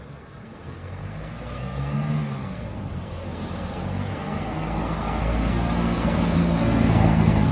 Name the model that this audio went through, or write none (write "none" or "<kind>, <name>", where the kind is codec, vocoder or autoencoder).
codec, SNAC